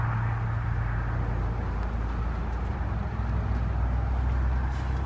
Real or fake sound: real